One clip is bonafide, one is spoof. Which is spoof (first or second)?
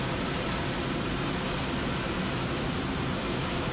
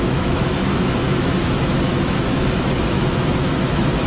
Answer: second